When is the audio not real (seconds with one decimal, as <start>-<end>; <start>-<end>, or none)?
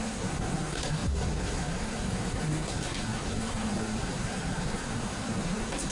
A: 0.0-5.9